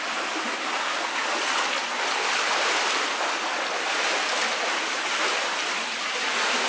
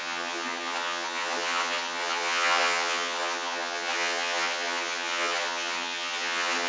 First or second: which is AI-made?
second